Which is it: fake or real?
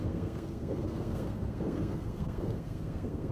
fake